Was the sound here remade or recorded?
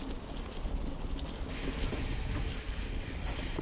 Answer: recorded